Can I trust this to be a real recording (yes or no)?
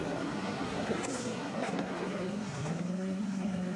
no